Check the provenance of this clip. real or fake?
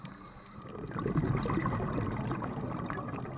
real